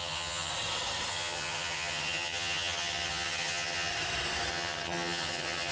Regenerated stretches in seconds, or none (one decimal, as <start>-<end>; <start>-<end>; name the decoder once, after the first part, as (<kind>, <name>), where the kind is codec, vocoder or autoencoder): 0.0-0.5 (vocoder, HiFi-GAN); 1.1-3.9; 4.5-5.7